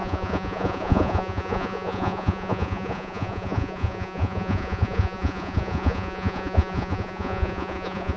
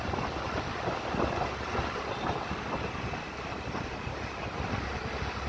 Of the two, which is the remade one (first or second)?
first